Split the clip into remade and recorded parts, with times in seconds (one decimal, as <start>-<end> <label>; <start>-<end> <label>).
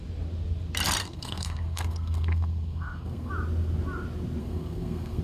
0.0-1.0 recorded; 1.0-3.3 remade; 3.3-4.4 recorded; 4.4-5.2 remade